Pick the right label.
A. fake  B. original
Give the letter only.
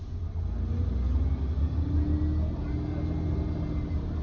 B